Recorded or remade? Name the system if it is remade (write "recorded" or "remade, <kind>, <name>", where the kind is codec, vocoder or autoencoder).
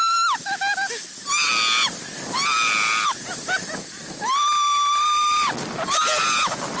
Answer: recorded